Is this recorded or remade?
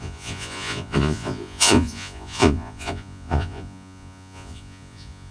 remade